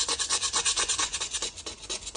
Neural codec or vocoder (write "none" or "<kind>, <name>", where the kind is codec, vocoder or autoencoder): vocoder, Vocos